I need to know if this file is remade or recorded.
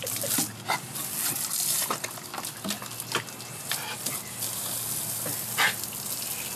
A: recorded